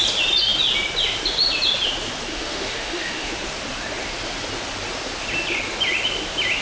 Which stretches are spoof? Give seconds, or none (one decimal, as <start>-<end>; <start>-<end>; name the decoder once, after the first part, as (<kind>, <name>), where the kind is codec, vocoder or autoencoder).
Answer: 2.3-3.3 (autoencoder, DAC-VAE)